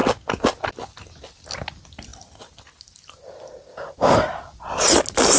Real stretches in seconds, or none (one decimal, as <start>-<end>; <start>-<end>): 0.0-5.4